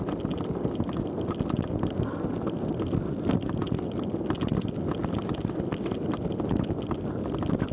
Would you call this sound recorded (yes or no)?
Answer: yes